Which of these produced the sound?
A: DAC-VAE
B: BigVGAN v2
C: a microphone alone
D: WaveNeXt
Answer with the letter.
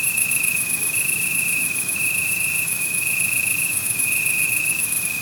A